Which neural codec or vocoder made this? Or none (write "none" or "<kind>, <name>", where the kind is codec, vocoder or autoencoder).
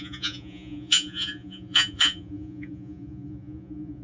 vocoder, Vocos